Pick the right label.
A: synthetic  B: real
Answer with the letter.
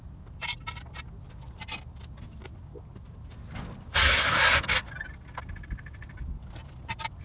B